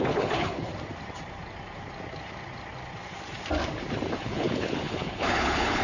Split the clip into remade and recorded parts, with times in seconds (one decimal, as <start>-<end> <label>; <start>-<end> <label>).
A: 0.0-0.7 remade; 0.7-4.2 recorded; 4.2-5.8 remade